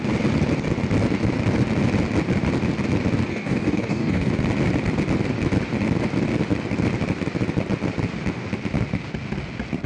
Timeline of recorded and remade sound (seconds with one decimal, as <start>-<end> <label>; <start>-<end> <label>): 0.0-3.3 recorded; 3.3-4.3 remade; 4.3-9.9 recorded